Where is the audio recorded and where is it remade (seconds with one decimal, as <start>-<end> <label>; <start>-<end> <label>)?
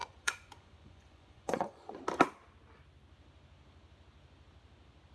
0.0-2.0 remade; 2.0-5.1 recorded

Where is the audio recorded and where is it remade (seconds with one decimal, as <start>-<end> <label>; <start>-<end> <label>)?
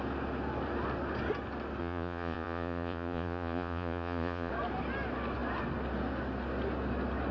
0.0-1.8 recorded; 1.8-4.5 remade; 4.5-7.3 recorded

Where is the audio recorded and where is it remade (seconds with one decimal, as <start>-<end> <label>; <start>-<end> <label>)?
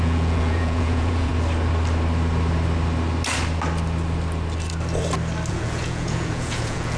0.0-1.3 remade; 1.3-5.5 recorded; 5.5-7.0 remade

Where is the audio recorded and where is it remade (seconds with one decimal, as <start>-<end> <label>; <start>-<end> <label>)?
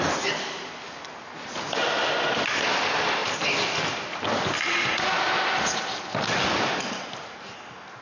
0.0-8.0 recorded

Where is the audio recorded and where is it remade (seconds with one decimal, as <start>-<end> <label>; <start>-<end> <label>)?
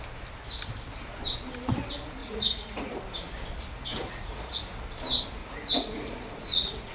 0.0-2.2 recorded; 2.2-3.0 remade; 3.0-3.9 recorded; 3.9-4.8 remade; 4.8-5.4 recorded; 5.4-6.9 remade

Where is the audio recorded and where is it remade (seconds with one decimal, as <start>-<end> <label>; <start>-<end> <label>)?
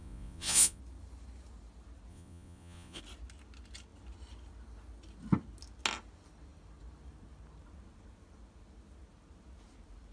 0.0-0.8 remade; 0.8-2.1 recorded; 2.1-3.0 remade; 3.0-10.1 recorded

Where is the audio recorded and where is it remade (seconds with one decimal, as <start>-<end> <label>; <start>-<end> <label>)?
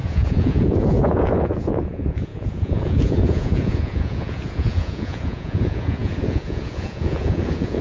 0.0-7.8 remade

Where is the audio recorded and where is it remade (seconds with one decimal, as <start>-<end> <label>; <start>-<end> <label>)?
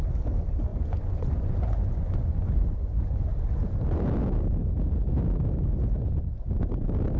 0.0-0.7 recorded; 0.7-3.1 remade; 3.1-7.2 recorded